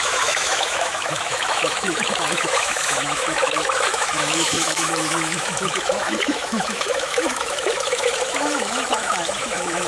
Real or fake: fake